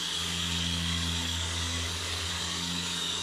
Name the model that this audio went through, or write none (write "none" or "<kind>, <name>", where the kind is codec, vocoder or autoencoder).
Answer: codec, DAC